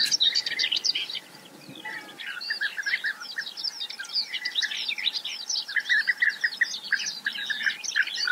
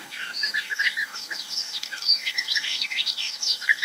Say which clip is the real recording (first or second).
first